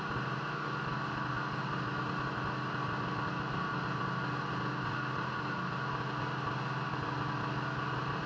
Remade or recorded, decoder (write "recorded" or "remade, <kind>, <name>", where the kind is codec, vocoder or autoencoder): recorded